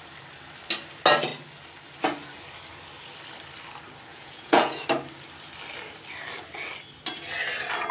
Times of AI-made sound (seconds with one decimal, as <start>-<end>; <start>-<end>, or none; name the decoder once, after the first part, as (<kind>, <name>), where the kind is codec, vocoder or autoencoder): 4.1-4.8 (vocoder, Vocos)